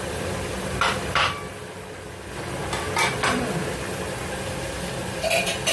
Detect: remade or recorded remade